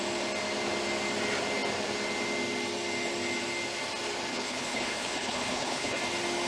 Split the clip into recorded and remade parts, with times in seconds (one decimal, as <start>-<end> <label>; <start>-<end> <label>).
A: 0.0-4.3 recorded; 4.3-6.0 remade; 6.0-6.5 recorded